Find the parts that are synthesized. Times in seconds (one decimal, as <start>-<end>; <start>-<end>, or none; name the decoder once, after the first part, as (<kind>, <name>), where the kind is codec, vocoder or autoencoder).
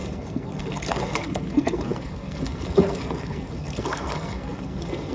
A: 0.0-5.1 (codec, SNAC)